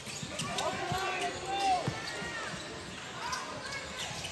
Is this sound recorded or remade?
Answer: recorded